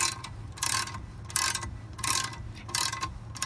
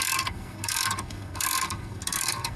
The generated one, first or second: second